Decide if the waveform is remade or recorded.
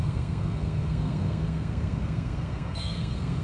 remade